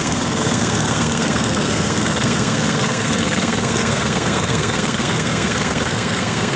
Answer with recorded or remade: remade